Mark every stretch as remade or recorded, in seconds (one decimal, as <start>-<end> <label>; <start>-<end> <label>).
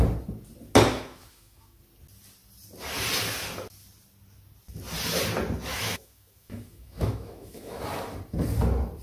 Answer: 0.0-0.9 recorded; 0.9-1.8 remade; 1.8-5.7 recorded; 5.7-7.8 remade; 7.8-9.0 recorded